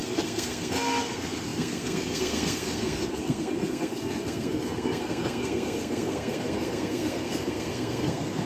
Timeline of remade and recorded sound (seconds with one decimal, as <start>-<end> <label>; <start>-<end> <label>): 0.0-8.5 remade